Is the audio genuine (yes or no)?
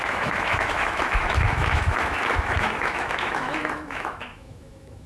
no